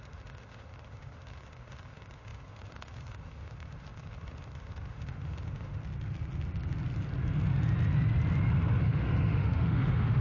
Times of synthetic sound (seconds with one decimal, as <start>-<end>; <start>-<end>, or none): 0.0-5.8; 8.8-10.2